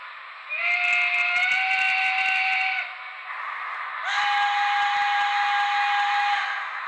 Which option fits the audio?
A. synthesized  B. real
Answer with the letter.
B